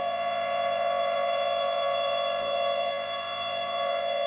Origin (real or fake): fake